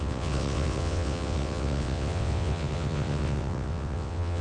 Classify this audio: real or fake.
fake